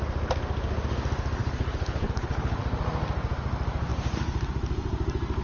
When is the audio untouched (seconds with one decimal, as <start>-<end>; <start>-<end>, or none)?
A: 0.0-1.4; 2.6-5.4